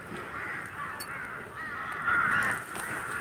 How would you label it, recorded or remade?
recorded